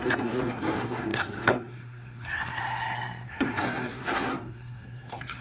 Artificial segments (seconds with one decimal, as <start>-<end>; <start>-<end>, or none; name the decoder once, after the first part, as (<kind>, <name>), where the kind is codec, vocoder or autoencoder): 0.0-5.4 (codec, SNAC)